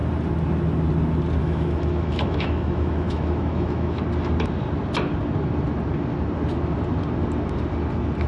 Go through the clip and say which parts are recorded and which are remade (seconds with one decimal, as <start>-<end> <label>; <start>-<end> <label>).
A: 0.0-1.4 recorded; 1.4-4.0 remade; 4.0-8.3 recorded